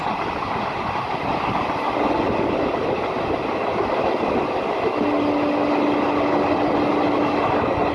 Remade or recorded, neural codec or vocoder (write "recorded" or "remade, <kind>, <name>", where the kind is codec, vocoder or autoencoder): recorded